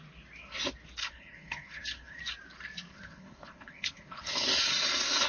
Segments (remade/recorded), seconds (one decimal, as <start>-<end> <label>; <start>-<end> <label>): 0.0-1.0 recorded; 1.0-2.2 remade; 2.2-2.9 recorded; 2.9-4.3 remade; 4.3-5.3 recorded